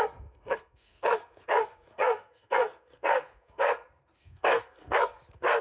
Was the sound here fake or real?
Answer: fake